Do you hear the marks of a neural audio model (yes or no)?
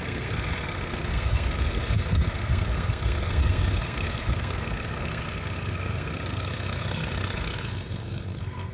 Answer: yes